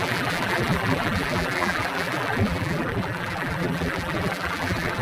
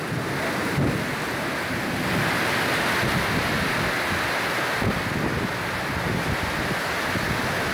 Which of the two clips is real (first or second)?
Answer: second